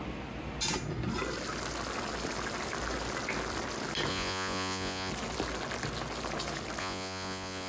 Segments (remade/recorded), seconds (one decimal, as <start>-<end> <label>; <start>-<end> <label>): 0.0-4.1 recorded; 4.1-5.1 remade; 5.1-6.8 recorded; 6.8-7.7 remade